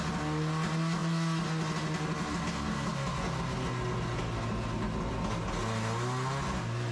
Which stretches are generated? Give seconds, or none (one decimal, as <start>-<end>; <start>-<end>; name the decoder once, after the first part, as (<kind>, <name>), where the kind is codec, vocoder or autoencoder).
none